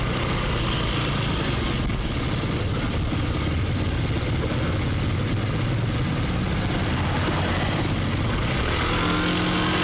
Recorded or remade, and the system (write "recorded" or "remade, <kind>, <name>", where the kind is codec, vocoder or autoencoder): recorded